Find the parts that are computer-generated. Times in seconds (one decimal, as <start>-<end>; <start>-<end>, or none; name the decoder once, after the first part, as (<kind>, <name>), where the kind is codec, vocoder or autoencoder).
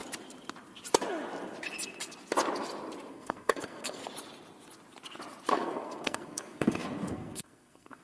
3.1-4.0 (codec, SNAC); 5.5-8.0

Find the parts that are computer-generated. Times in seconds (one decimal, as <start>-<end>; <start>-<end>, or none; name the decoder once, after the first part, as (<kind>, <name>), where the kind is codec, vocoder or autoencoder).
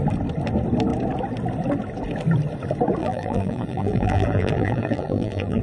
3.0-5.6 (vocoder, BigVGAN v2)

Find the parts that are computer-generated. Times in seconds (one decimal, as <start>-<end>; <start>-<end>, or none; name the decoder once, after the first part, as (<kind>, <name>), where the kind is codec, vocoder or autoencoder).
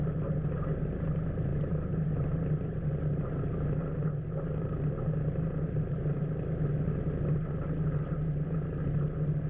none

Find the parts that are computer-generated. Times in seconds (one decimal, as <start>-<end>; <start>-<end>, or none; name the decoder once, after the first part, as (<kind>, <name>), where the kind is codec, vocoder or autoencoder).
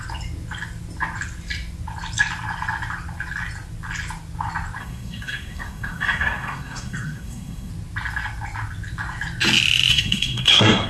4.8-7.7 (codec, SNAC); 9.9-10.9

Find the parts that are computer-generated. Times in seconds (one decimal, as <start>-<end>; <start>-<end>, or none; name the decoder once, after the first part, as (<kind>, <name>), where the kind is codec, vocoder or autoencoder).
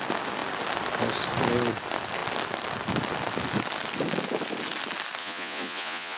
5.2-6.2 (vocoder, Vocos)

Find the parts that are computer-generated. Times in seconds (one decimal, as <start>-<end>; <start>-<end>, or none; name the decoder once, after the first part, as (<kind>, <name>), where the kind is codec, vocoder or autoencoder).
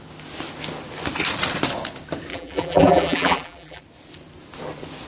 2.3-3.8 (vocoder, BigVGAN v2)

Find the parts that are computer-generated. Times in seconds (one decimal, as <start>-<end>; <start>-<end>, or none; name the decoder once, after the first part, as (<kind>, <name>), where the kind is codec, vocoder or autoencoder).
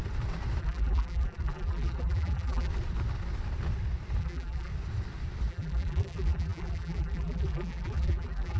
0.6-2.7 (vocoder, BigVGAN v2); 4.2-4.7; 5.5-8.6